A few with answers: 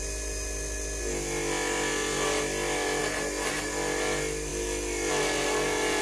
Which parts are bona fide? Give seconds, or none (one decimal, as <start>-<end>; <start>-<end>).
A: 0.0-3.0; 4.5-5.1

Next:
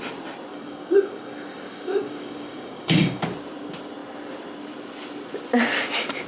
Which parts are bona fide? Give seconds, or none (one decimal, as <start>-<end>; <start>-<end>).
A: 0.0-0.5; 3.2-6.3

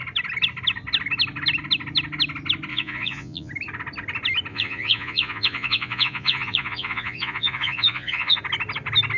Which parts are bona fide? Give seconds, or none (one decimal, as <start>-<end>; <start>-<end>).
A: 0.0-2.7; 3.5-4.5; 8.4-9.2

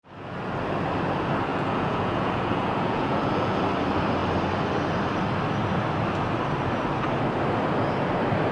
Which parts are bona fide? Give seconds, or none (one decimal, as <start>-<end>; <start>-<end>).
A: 0.0-1.5; 3.6-8.5

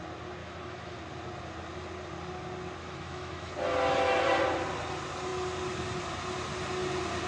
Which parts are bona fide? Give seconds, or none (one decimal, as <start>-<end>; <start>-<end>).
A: 0.0-0.4; 1.0-2.8; 3.5-7.3